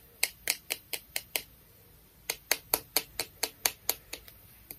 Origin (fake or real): real